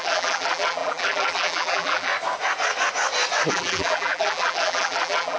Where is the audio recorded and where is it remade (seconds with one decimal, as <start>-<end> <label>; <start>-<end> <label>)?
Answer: 0.0-2.1 remade; 2.1-3.5 recorded; 3.5-5.4 remade